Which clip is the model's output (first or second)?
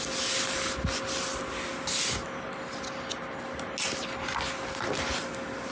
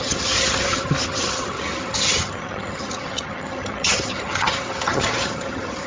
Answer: second